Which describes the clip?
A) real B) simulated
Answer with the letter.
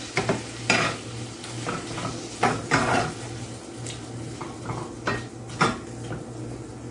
A